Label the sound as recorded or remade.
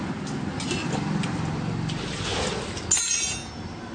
recorded